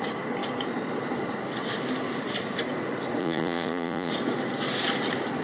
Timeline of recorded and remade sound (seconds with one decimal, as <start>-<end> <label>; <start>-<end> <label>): 0.0-3.2 recorded; 3.2-4.1 remade; 4.1-5.4 recorded